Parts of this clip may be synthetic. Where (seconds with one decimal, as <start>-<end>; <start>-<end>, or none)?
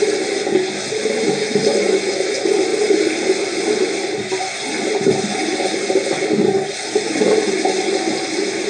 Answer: none